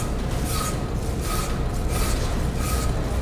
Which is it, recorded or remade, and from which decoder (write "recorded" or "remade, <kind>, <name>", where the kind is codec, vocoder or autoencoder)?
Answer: recorded